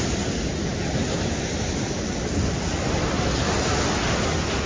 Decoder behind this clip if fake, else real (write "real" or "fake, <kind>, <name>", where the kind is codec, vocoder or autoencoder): real